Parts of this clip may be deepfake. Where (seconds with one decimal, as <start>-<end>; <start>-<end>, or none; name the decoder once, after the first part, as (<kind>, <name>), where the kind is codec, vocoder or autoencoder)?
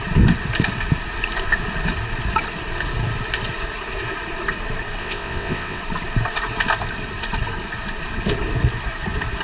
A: 5.0-5.8 (vocoder, WaveNeXt)